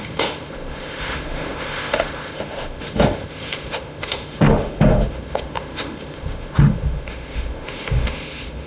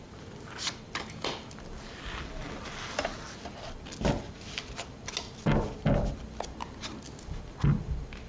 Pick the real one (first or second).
second